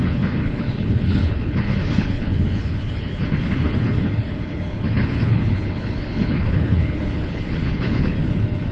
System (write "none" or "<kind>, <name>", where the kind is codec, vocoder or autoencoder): codec, HILCodec